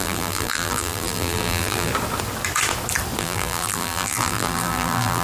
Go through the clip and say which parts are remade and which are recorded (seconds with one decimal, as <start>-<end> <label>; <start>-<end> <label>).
0.0-1.9 remade; 1.9-3.2 recorded; 3.2-5.2 remade